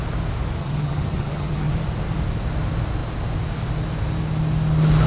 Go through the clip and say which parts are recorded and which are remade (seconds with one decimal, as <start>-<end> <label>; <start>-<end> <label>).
0.0-0.6 recorded; 0.6-1.7 remade; 1.7-5.1 recorded